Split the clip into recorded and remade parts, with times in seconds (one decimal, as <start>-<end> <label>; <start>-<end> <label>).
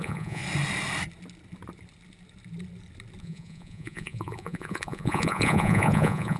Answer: 0.0-0.4 remade; 0.4-3.2 recorded; 3.2-6.4 remade